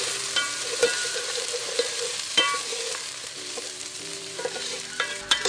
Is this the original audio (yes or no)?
no